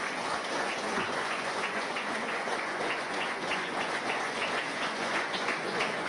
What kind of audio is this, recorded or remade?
remade